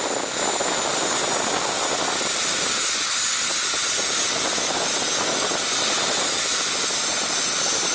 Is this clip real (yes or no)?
yes